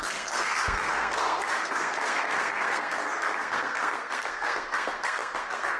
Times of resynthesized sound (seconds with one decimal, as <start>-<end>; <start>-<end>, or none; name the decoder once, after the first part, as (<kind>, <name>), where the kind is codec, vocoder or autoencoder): 0.0-5.8 (codec, SNAC)